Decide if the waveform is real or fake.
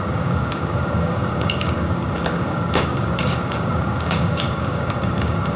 fake